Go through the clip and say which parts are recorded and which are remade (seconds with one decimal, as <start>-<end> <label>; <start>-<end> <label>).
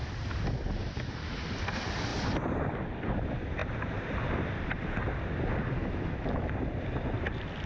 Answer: 0.0-0.8 recorded; 0.8-1.4 remade; 1.4-5.8 recorded; 5.8-6.5 remade; 6.5-7.7 recorded